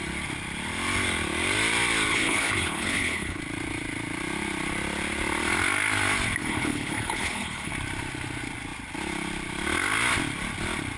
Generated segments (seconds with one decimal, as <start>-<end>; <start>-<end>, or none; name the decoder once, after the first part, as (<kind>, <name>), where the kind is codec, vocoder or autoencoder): 2.1-3.4 (codec, HILCodec); 6.4-7.7